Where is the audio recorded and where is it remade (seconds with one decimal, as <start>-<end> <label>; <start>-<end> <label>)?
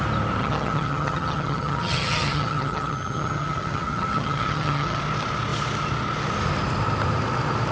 0.0-0.4 recorded; 0.4-5.0 remade; 5.0-7.7 recorded